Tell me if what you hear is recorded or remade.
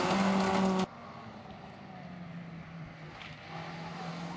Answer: recorded